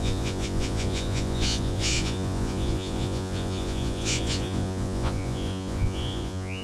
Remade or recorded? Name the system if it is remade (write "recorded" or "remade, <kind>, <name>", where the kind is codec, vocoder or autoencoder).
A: remade, vocoder, Vocos